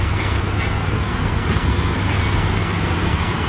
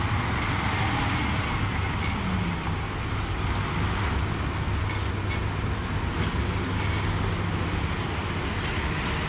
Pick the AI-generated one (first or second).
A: first